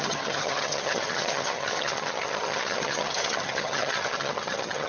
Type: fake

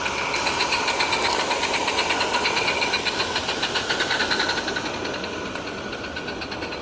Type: real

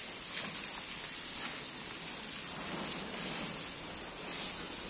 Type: real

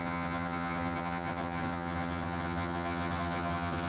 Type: fake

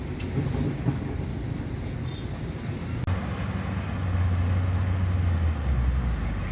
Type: real